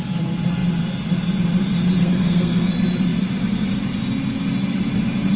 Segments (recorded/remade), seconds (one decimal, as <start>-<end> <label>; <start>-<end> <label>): 0.0-2.0 recorded; 2.0-2.7 remade; 2.7-5.4 recorded